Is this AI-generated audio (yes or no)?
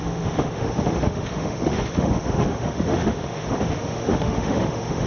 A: yes